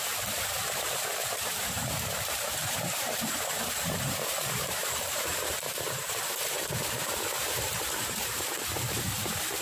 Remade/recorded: remade